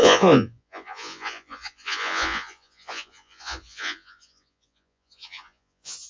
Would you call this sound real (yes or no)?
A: no